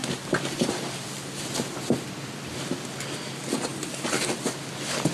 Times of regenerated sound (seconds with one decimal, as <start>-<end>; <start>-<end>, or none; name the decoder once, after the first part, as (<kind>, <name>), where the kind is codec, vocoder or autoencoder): 0.0-1.4 (vocoder, BigVGAN v2); 3.7-4.5